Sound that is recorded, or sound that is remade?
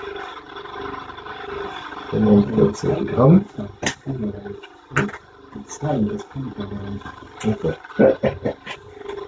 recorded